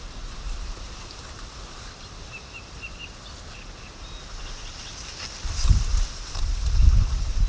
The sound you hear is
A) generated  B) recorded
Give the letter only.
B